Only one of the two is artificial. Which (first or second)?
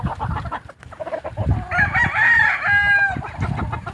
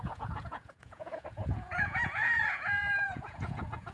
second